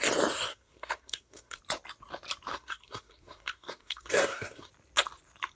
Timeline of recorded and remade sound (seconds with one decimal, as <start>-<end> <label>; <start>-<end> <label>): 0.0-0.5 recorded; 0.5-1.6 remade; 1.6-2.5 recorded; 2.5-4.7 remade; 4.7-5.6 recorded